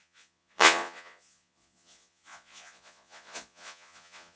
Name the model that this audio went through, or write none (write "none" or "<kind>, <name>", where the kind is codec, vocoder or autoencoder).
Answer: vocoder, Vocos